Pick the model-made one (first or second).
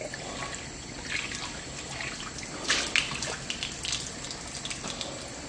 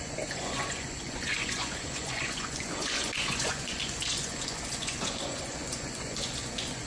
second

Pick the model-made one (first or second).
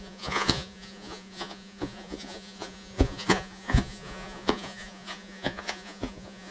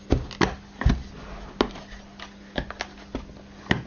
first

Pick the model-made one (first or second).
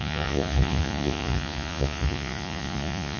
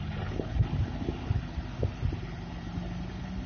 first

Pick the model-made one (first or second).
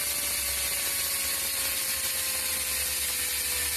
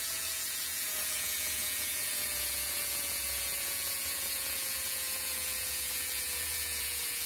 second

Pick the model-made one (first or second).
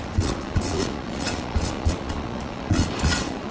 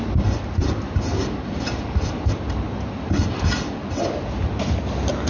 first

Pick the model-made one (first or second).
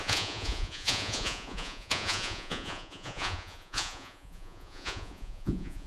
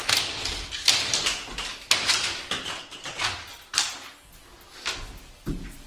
first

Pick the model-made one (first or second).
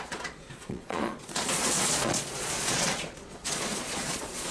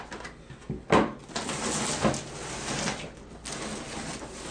first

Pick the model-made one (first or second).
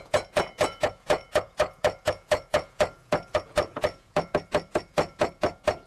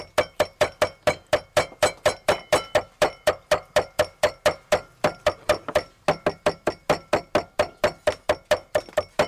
first